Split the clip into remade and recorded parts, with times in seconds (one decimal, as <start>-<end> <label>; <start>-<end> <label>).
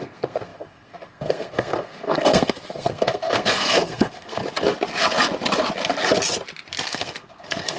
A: 0.0-4.4 remade; 4.4-6.9 recorded; 6.9-7.8 remade